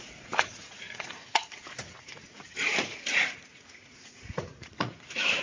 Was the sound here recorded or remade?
remade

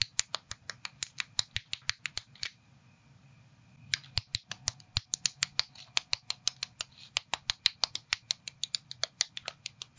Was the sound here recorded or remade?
recorded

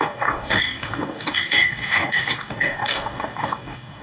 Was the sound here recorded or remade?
remade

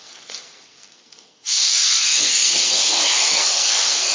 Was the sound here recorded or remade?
remade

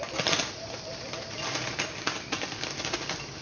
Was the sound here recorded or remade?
recorded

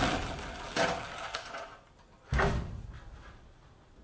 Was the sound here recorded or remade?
recorded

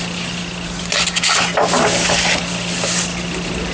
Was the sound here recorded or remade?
recorded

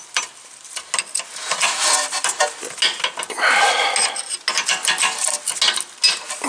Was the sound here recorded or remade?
recorded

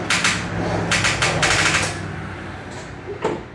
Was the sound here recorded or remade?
recorded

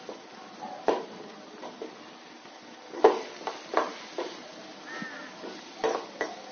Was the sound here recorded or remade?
recorded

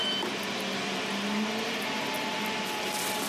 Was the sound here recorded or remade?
recorded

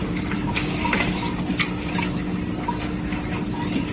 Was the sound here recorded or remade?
recorded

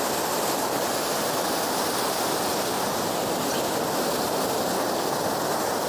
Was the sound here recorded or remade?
recorded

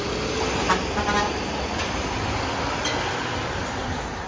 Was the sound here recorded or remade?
recorded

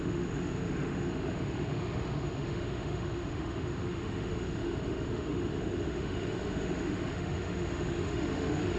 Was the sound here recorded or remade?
remade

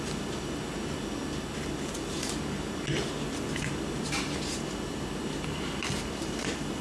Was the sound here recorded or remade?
recorded